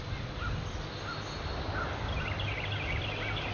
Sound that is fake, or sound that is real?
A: real